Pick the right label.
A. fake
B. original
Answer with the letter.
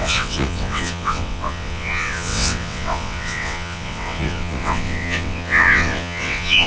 A